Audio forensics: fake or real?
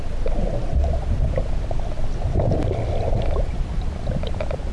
real